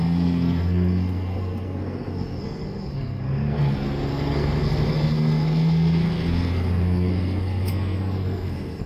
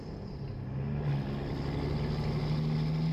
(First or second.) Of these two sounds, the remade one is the first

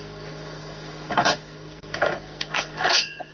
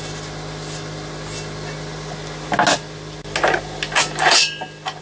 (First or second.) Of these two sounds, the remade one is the first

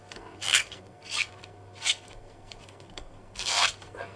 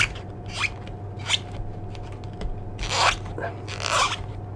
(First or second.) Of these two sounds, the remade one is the first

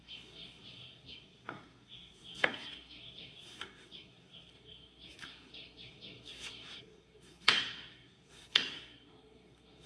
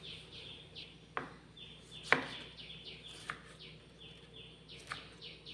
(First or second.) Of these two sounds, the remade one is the first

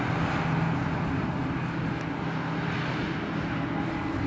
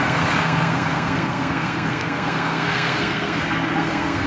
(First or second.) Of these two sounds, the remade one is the second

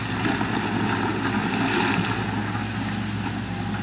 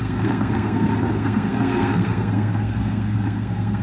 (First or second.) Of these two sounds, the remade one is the second